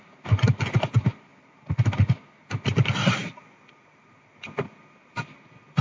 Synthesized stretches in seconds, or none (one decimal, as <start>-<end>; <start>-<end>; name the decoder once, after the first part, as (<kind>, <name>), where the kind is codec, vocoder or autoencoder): none